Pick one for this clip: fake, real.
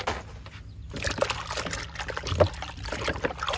real